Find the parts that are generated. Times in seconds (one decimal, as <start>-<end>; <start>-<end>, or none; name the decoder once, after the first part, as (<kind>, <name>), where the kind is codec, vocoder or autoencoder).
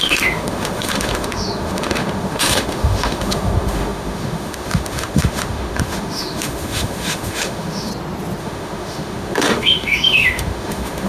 0.0-7.9 (autoencoder, DAC-VAE); 8.4-11.1